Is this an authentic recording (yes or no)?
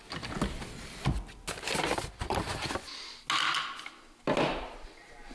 yes